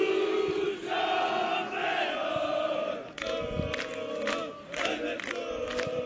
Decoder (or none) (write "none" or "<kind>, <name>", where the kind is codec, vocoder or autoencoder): none